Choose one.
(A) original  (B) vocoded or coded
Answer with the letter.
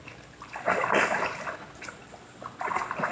A